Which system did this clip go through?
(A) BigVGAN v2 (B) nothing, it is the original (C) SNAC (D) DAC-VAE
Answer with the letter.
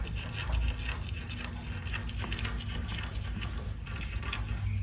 B